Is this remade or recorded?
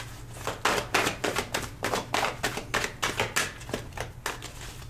recorded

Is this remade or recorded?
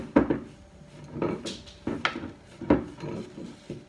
recorded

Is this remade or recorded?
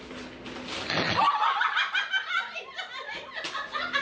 recorded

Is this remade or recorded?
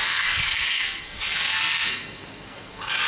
remade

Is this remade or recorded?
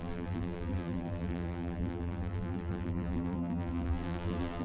remade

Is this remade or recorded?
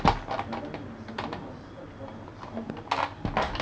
recorded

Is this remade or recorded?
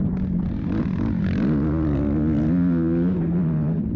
recorded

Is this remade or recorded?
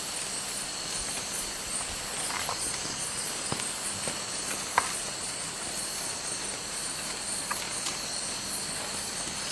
recorded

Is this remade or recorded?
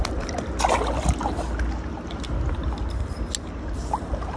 recorded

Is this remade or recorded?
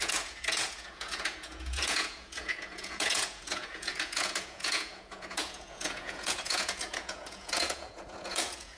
remade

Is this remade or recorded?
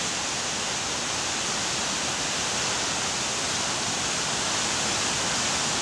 recorded